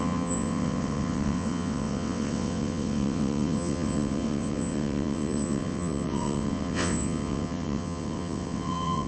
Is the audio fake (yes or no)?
yes